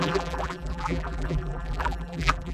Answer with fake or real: fake